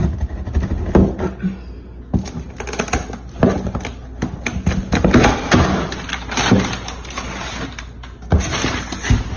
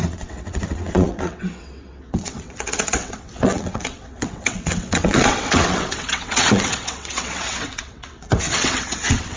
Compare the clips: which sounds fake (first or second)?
second